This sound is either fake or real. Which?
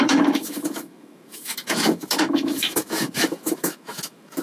fake